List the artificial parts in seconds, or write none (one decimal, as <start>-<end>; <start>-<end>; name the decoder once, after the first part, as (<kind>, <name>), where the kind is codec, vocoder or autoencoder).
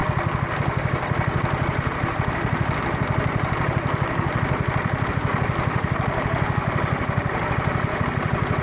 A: none